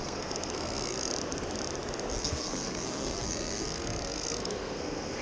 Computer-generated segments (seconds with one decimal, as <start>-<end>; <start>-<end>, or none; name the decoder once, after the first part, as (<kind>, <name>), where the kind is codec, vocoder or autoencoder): 0.0-1.1 (codec, SNAC); 2.2-5.2